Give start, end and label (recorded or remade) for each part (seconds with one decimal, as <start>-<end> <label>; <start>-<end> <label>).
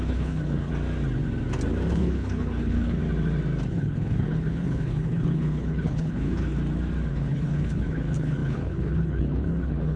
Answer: 0.0-0.7 remade; 0.7-1.9 recorded; 1.9-3.0 remade; 3.0-3.7 recorded; 3.7-6.6 remade; 6.6-7.1 recorded; 7.1-10.0 remade